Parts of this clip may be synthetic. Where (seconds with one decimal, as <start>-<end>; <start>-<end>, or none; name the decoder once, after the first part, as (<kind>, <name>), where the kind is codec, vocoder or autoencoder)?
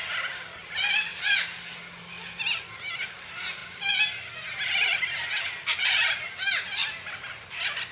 none